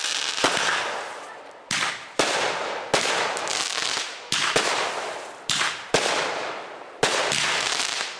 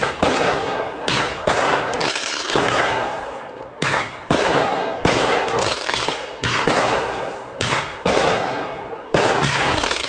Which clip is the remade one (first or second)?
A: second